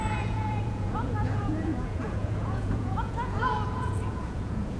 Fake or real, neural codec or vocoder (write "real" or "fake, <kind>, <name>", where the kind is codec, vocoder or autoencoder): fake, vocoder, Vocos